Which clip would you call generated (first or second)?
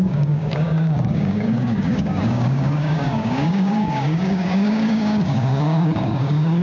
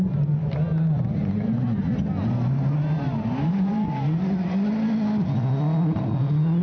first